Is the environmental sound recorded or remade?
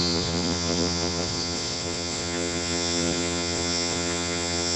remade